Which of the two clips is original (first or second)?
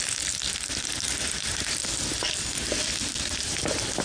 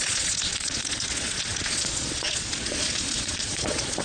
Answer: first